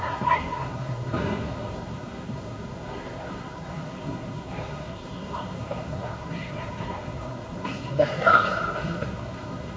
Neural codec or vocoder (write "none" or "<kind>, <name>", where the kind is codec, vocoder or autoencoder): codec, SNAC